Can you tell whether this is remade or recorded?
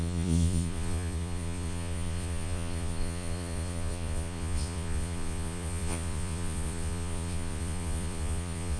remade